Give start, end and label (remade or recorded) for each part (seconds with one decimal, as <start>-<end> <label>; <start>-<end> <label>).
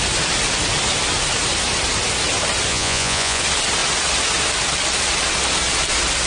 0.0-2.7 recorded; 2.7-3.4 remade; 3.4-6.3 recorded